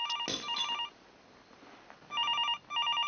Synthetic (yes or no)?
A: no